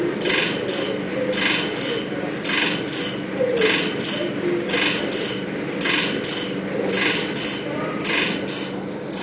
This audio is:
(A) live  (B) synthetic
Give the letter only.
A